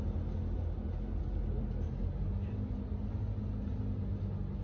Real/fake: real